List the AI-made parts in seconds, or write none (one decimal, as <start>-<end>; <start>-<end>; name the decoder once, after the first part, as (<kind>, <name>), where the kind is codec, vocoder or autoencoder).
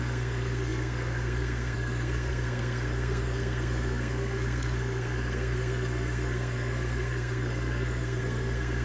0.0-8.8 (codec, SNAC)